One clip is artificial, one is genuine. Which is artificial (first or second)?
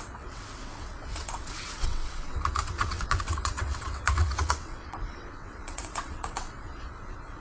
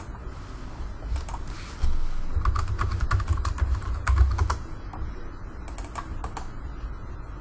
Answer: first